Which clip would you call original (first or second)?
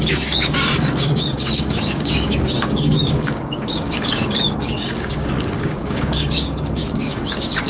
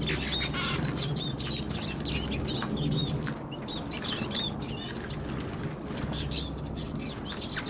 second